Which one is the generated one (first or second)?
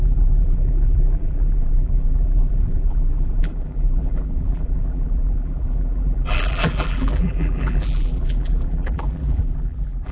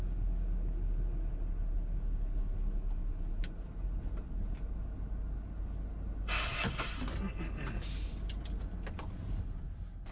first